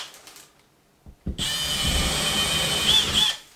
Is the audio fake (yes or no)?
no